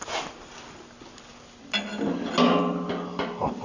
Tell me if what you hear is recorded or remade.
recorded